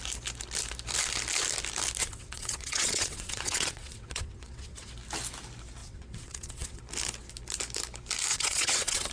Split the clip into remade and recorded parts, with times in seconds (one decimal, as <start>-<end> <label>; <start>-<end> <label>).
0.0-2.0 recorded; 2.0-4.9 remade; 4.9-5.8 recorded; 5.8-6.8 remade; 6.8-8.3 recorded; 8.3-9.1 remade